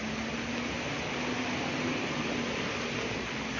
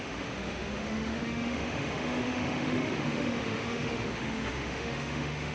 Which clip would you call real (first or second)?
first